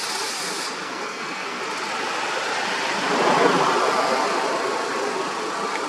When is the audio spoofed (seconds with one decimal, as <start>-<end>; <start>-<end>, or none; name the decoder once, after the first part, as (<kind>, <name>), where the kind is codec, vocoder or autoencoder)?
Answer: 0.8-1.6 (codec, SNAC)